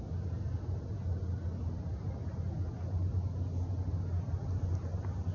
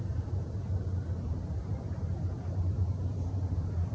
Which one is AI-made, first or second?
second